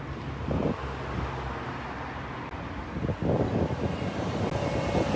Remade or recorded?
recorded